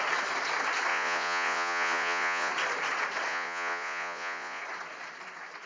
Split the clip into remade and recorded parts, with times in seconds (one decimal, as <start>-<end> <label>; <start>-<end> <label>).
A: 0.0-0.9 recorded; 0.9-2.5 remade; 2.5-3.3 recorded; 3.3-4.6 remade; 4.6-5.7 recorded